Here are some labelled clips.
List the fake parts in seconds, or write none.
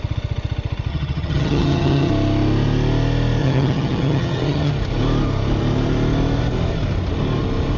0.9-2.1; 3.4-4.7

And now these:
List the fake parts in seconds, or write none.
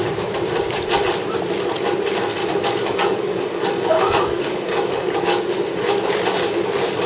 2.4-5.4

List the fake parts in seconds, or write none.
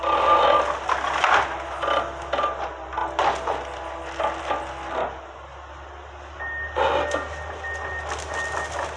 none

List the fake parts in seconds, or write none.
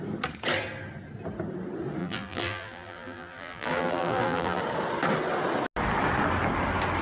2.0-4.6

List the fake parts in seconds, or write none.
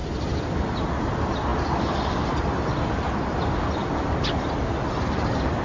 none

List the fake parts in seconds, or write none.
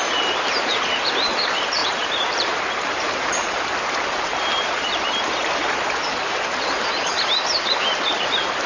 0.0-8.7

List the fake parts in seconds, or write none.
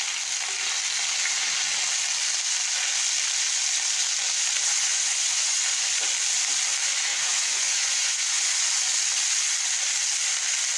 4.9-5.6; 7.1-8.5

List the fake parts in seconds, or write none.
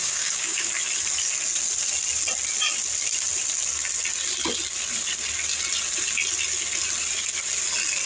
0.0-0.7